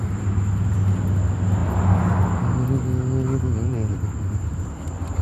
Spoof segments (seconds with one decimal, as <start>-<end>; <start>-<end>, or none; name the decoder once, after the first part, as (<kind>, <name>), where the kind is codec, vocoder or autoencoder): 3.7-4.7 (vocoder, BigVGAN v2)